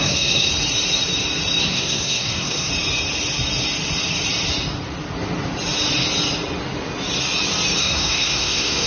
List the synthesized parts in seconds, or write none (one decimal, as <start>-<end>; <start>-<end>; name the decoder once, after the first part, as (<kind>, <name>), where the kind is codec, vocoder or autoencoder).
0.0-0.5 (codec, SNAC); 1.6-2.7; 7.8-8.9